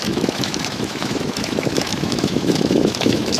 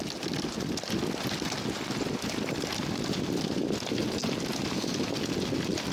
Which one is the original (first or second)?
second